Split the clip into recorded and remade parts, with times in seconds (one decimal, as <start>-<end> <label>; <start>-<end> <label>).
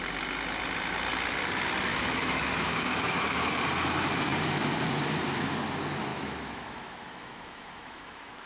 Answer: 0.0-1.9 recorded; 1.9-3.5 remade; 3.5-6.1 recorded; 6.1-8.5 remade